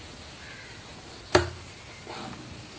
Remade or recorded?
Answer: recorded